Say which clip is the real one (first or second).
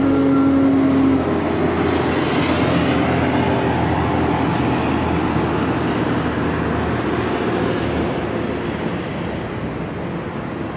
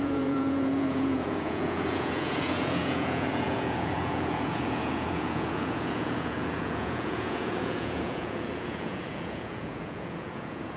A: first